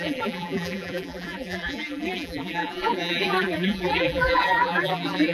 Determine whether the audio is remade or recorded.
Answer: remade